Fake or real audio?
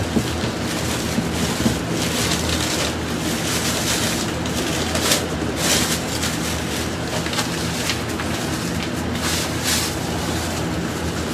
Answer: real